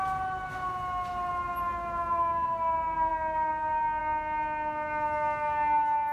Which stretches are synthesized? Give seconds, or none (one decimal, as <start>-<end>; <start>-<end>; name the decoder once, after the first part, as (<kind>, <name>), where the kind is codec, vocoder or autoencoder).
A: none